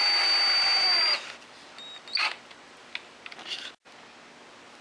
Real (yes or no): yes